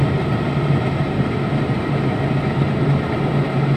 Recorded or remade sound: recorded